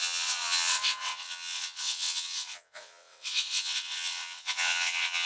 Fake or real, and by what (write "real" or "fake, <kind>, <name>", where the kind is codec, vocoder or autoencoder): fake, vocoder, WaveNeXt